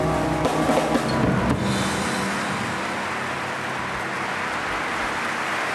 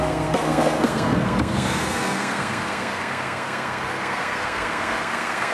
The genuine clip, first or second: first